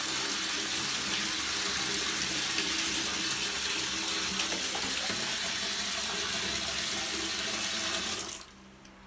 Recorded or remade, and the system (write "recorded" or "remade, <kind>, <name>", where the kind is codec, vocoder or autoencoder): recorded